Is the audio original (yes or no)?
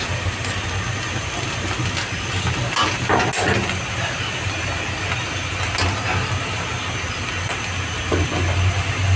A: yes